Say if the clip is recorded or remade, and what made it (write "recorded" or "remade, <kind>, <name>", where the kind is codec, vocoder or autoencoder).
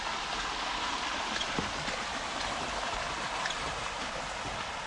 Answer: recorded